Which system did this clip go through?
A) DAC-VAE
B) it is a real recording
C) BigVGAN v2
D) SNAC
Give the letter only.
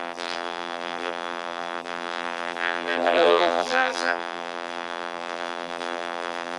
C